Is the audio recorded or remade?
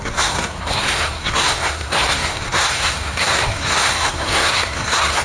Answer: remade